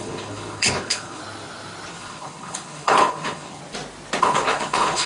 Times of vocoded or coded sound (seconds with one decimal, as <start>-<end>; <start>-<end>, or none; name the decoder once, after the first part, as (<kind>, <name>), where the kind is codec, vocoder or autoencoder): 0.0-1.2 (codec, HILCodec); 1.9-3.6; 4.2-5.1